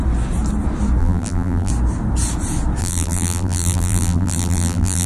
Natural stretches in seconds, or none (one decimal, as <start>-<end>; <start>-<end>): 0.0-1.0; 1.7-2.8